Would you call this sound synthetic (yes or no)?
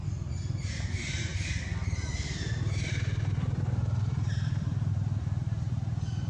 yes